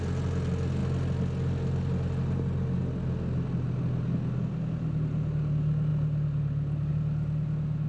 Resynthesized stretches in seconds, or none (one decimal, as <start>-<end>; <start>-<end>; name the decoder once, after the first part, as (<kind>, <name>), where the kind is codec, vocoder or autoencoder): none